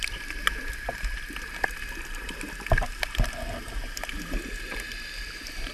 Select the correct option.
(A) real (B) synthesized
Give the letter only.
A